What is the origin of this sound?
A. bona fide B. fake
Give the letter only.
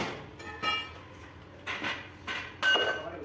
A